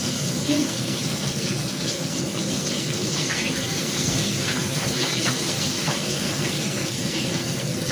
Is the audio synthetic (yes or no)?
yes